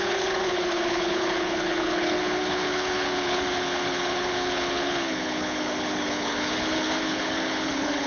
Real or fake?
fake